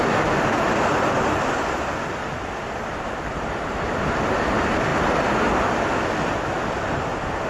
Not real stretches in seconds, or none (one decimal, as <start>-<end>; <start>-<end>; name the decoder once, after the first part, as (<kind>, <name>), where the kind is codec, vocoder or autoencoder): none